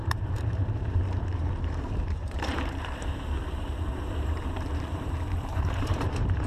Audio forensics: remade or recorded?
remade